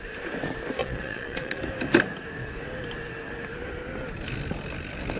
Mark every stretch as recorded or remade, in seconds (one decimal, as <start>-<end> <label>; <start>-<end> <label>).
0.0-0.8 recorded; 0.8-1.6 remade; 1.6-5.2 recorded